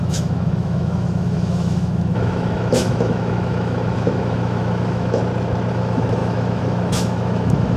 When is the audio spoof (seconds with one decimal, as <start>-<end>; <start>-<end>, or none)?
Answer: 0.0-5.2; 5.7-7.8